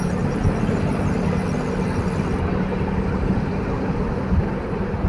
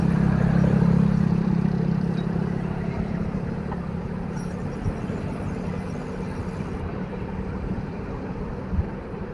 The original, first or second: first